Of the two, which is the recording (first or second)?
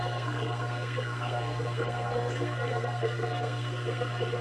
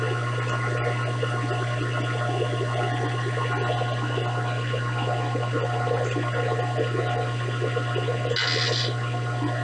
second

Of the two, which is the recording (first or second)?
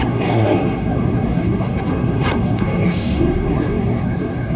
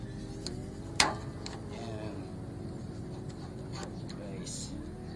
second